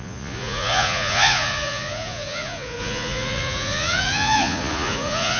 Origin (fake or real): fake